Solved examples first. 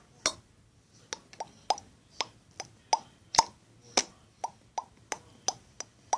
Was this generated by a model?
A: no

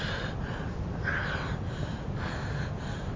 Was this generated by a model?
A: no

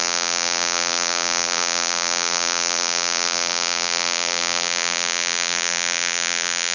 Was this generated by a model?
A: yes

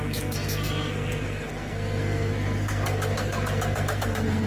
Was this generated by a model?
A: yes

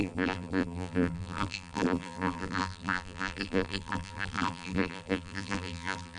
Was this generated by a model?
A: yes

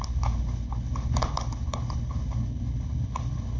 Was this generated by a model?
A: yes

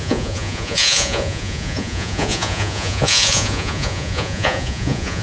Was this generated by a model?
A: yes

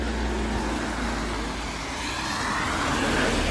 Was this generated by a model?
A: no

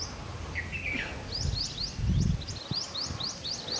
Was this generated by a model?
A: no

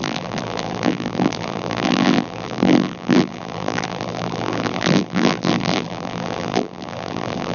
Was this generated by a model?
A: yes